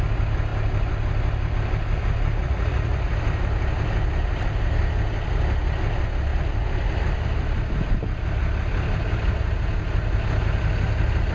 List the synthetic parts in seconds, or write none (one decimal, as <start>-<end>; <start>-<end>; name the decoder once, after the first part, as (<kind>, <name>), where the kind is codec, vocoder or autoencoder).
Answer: 2.4-3.1 (vocoder, Vocos)